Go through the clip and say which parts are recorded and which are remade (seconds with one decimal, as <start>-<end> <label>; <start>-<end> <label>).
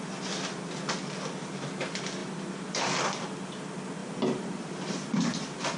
0.0-2.2 recorded; 2.2-3.5 remade; 3.5-4.0 recorded; 4.0-5.8 remade